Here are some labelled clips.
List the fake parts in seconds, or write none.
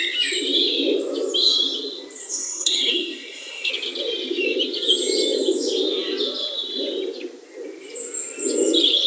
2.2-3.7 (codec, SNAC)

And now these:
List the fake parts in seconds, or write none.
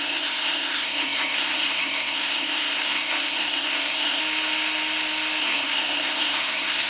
0.0-4.2 (codec, SNAC); 5.4-6.9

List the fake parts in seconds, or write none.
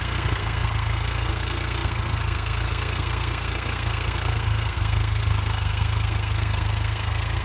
0.0-7.4 (codec, SNAC)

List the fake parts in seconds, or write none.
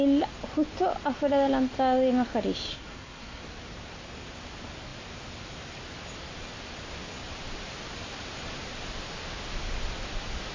2.7-3.4 (codec, SNAC)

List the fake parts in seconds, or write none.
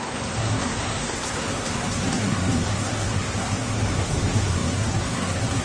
0.0-5.6 (codec, SNAC)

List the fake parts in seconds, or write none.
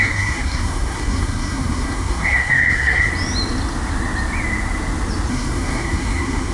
0.0-3.1 (codec, SNAC); 5.3-6.5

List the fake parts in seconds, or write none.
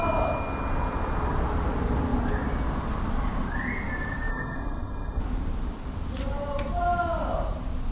4.3-5.2 (codec, SNAC)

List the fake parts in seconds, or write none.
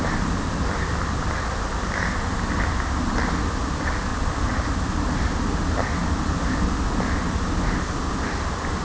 none